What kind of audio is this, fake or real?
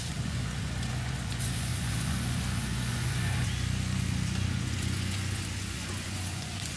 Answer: fake